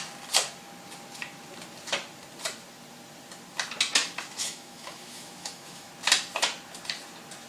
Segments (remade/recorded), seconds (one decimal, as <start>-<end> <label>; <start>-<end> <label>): 0.0-4.4 recorded; 4.4-5.9 remade; 5.9-7.5 recorded